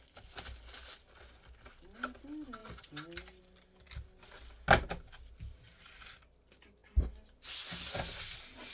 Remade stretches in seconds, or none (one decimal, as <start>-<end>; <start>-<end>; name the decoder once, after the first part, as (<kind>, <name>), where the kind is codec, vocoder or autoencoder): none